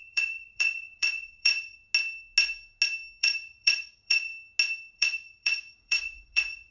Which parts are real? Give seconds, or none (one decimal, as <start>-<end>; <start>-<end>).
1.8-3.2; 4.3-4.9